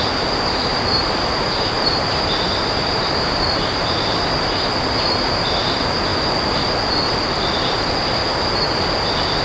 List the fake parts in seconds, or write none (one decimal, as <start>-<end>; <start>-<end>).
0.7-4.3